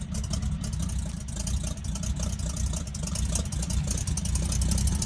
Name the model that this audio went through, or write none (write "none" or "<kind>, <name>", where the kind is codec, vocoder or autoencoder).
none